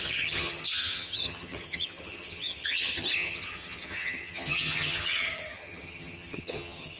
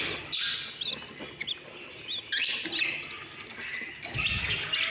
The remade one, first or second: first